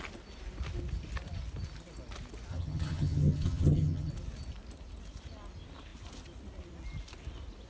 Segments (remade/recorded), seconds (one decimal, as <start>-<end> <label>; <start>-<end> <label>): 0.0-2.5 recorded; 2.5-4.1 remade; 4.1-7.7 recorded